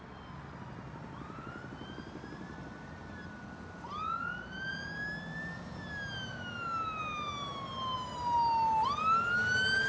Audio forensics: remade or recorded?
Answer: recorded